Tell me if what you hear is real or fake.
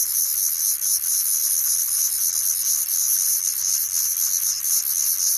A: real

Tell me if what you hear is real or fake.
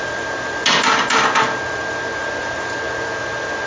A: real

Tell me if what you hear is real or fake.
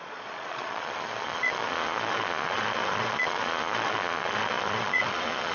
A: fake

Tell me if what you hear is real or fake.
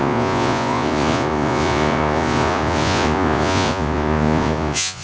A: fake